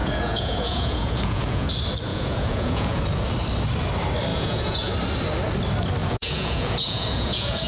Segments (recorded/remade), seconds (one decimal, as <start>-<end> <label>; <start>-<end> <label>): 0.0-1.7 remade; 1.7-2.1 recorded; 2.1-3.0 remade; 3.0-4.3 recorded; 4.3-4.9 remade; 4.9-6.0 recorded; 6.0-7.7 remade